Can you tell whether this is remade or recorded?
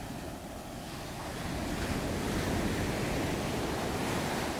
recorded